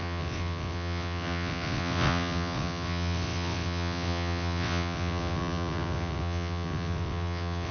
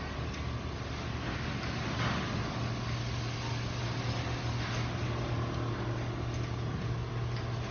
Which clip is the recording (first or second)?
second